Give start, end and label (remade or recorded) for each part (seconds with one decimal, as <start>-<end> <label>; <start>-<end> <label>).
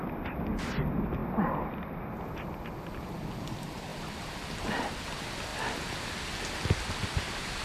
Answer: 0.0-7.6 recorded